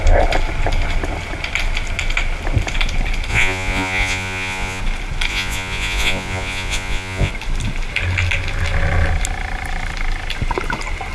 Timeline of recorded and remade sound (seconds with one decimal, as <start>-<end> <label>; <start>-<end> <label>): 0.0-3.3 recorded; 3.3-4.8 remade; 4.8-5.3 recorded; 5.3-7.3 remade; 7.3-11.1 recorded